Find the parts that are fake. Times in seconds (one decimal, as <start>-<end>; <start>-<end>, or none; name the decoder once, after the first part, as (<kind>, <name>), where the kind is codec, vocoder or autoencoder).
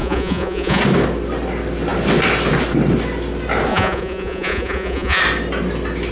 0.0-0.8 (vocoder, Vocos); 3.7-5.2